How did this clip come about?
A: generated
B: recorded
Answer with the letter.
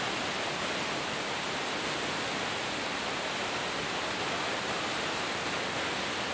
B